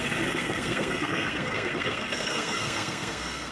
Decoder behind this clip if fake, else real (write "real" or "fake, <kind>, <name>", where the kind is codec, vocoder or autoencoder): fake, codec, SNAC